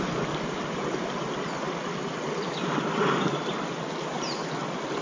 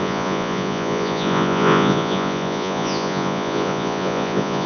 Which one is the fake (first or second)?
second